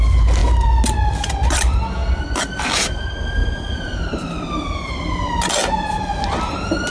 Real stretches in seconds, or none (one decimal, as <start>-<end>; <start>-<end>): 0.0-3.4; 5.3-6.9